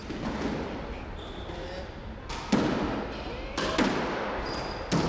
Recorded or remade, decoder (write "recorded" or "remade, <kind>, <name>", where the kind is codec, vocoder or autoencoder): recorded